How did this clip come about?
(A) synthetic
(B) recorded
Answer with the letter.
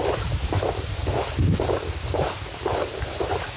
A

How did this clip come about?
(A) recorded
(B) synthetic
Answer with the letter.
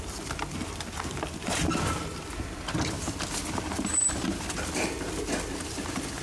B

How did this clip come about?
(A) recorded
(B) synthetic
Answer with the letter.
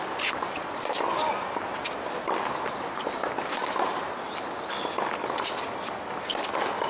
A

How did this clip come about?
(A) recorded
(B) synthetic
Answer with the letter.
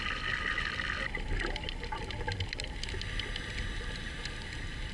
A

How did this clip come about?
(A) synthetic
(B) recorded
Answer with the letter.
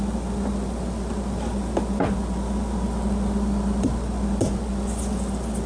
B